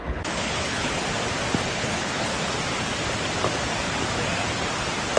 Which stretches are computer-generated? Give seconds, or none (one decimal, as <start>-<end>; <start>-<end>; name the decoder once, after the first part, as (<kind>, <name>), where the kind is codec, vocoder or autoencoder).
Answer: 0.0-0.9 (codec, HILCodec); 1.7-2.4